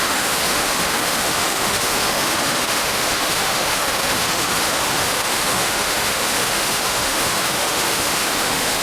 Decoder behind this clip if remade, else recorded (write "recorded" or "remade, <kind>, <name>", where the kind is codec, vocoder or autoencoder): remade, autoencoder, DAC-VAE